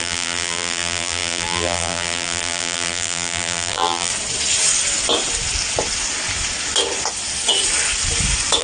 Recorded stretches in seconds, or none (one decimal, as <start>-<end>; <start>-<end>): 4.1-8.6

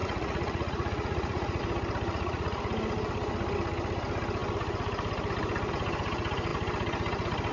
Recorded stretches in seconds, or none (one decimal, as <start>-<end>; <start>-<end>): 1.6-2.1; 2.6-7.5